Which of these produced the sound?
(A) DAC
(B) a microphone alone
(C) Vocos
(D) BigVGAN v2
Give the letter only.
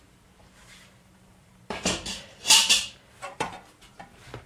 D